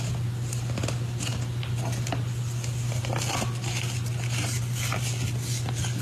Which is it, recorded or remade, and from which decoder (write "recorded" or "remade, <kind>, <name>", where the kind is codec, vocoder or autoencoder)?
recorded